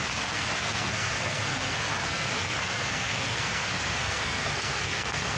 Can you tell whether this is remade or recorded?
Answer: remade